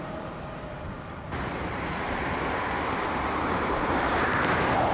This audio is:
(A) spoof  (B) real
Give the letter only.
A